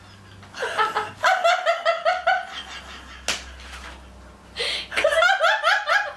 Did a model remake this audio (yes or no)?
no